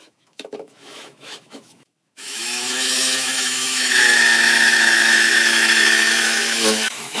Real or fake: fake